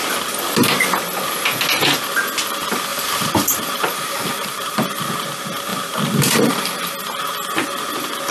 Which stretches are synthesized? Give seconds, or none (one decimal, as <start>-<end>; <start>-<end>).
2.9-4.8; 5.7-6.7